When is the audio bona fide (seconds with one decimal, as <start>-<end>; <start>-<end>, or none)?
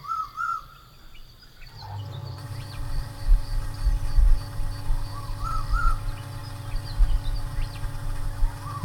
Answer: 0.0-2.2; 3.5-8.8